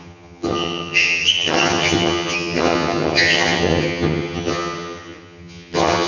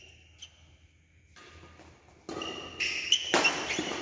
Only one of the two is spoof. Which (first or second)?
first